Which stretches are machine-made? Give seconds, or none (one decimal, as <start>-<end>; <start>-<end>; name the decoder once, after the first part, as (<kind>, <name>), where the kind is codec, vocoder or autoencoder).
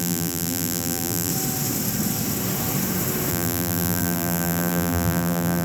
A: 0.0-1.3 (vocoder, BigVGAN v2); 3.3-5.6